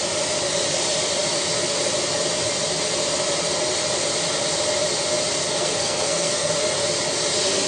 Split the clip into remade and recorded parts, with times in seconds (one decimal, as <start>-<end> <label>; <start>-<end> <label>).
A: 0.0-5.4 recorded; 5.4-6.5 remade; 6.5-7.7 recorded